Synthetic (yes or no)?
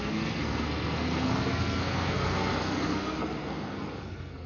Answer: yes